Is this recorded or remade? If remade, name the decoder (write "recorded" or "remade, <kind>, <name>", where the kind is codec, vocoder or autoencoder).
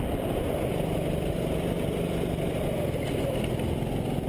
recorded